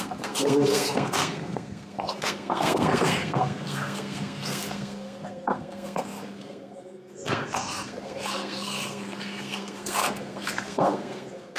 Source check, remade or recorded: remade